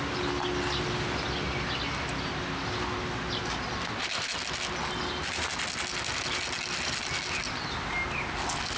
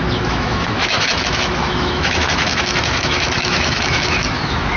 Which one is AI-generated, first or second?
second